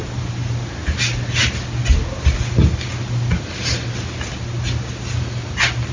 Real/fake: real